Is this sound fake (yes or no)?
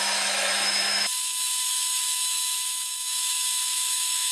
yes